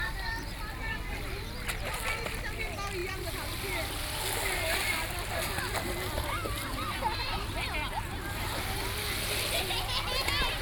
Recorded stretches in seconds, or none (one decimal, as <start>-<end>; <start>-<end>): 0.0-10.6

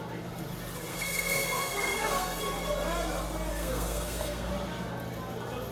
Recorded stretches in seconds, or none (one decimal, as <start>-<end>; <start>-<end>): 0.0-0.9; 2.4-3.5; 4.5-5.7

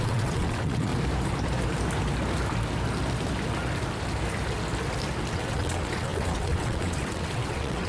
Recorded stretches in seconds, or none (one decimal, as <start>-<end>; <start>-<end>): 0.9-5.3

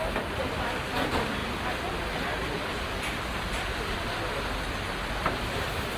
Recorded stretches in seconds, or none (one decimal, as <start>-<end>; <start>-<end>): 0.0-1.4; 4.1-5.3

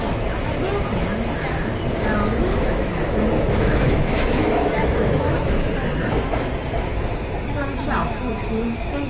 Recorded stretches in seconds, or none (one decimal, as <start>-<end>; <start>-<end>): 0.0-2.3; 5.7-9.1

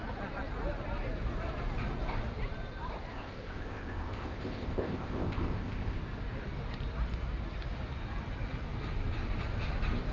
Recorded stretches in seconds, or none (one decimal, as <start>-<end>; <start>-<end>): 0.0-3.1; 6.0-10.1

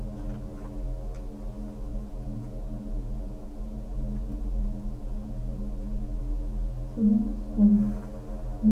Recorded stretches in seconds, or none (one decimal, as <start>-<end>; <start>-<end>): 0.0-1.9; 6.2-8.7